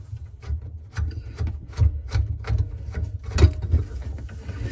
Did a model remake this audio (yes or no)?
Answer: no